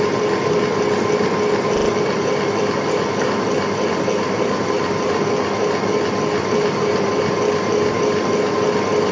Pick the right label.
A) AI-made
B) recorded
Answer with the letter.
B